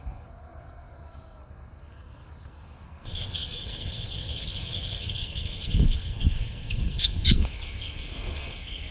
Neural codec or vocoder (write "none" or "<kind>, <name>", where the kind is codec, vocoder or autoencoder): codec, SNAC